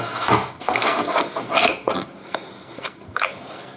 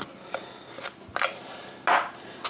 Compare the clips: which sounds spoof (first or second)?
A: first